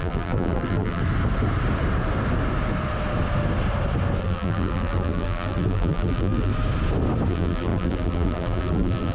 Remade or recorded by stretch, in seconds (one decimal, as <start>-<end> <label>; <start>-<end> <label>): 0.0-1.0 remade; 1.0-4.2 recorded; 4.2-6.5 remade; 6.5-7.3 recorded; 7.3-9.1 remade